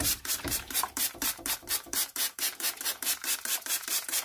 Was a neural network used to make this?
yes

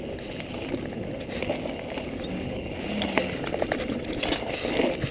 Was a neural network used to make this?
no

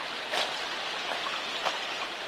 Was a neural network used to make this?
no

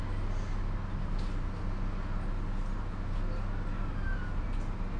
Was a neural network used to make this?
no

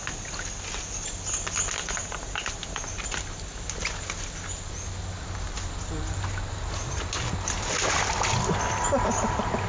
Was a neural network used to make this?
no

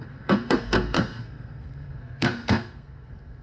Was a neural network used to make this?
yes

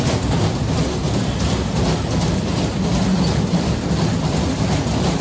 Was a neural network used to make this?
no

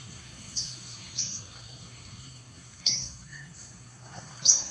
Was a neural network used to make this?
yes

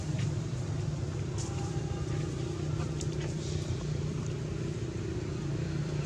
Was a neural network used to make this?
yes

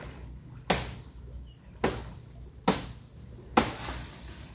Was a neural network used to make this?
no